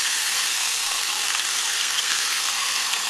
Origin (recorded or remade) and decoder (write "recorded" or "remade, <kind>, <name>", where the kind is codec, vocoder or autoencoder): remade, codec, SNAC